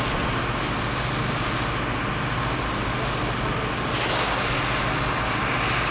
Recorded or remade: recorded